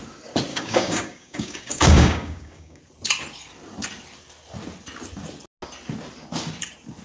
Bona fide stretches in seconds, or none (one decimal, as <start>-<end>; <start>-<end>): 0.0-0.5; 2.8-7.0